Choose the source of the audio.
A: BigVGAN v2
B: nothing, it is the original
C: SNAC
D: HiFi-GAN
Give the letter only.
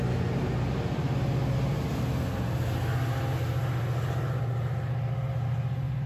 B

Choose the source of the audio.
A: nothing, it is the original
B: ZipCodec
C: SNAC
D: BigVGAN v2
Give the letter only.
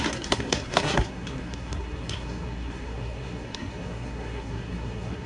C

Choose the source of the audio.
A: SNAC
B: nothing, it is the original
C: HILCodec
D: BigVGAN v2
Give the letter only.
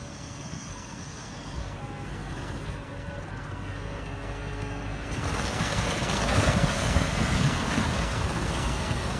A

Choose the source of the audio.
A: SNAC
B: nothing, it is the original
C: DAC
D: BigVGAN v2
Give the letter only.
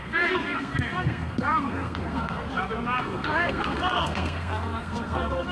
A